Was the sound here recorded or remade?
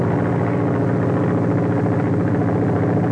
recorded